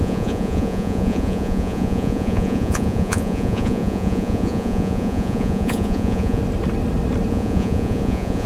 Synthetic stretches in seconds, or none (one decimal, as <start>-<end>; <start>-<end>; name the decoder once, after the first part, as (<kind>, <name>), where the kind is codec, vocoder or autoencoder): 0.0-6.4 (vocoder, Vocos); 7.3-8.5